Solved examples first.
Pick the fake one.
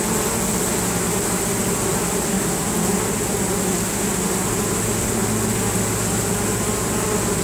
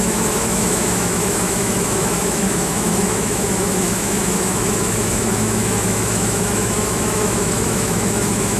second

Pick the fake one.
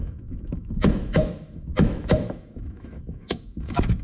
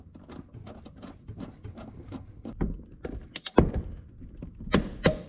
first